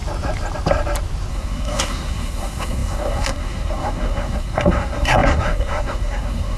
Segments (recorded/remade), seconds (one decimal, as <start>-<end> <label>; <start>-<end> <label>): 0.0-1.3 recorded; 1.3-6.6 remade